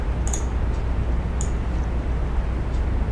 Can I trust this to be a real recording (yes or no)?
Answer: yes